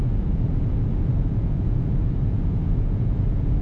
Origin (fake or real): fake